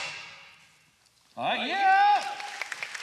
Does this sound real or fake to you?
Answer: real